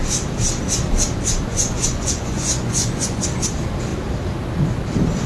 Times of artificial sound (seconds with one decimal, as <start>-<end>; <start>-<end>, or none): 1.5-3.2